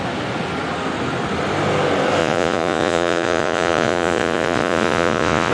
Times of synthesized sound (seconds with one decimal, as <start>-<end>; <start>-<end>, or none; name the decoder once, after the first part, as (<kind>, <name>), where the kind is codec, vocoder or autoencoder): 2.2-5.5 (vocoder, Vocos)